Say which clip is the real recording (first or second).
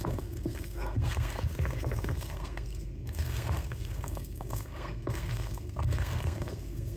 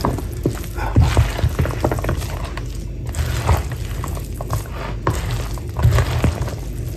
second